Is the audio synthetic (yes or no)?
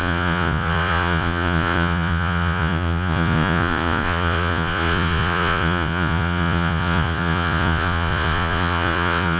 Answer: yes